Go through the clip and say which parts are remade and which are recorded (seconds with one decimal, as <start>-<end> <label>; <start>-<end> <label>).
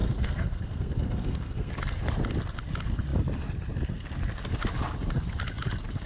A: 0.0-1.7 remade; 1.7-6.1 recorded